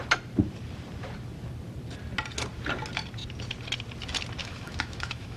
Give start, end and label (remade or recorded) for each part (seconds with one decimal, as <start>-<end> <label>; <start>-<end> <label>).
0.0-4.4 recorded; 4.4-5.4 remade